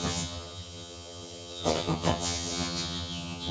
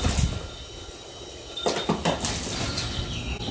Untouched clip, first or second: second